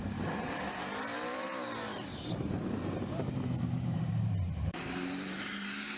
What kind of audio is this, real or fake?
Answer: fake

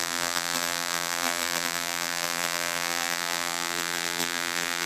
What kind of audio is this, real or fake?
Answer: fake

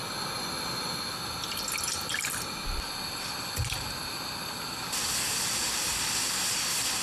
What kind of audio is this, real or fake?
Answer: real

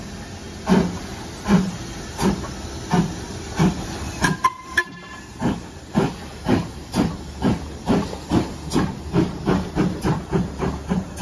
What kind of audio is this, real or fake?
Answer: real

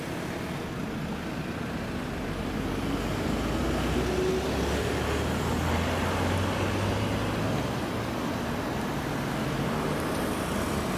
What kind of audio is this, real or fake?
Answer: real